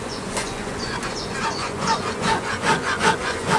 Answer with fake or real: fake